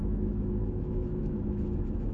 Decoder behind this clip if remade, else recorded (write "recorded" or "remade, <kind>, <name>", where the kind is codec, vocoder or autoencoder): remade, autoencoder, DAC-VAE